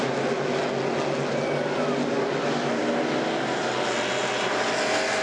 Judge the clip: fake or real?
real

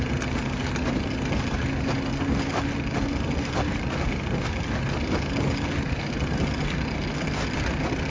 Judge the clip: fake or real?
real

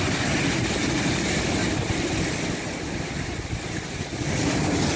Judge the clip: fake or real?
real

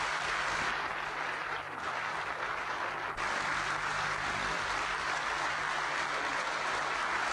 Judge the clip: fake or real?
real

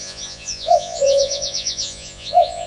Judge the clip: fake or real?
fake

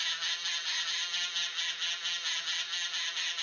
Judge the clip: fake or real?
real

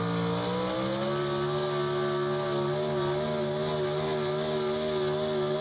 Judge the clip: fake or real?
real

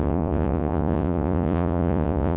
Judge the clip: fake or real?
fake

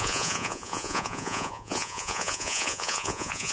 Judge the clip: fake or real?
fake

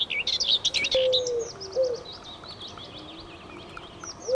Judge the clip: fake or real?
real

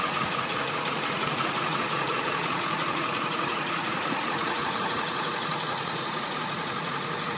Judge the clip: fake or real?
fake